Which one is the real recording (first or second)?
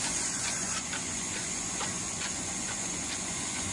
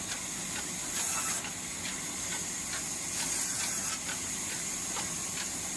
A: second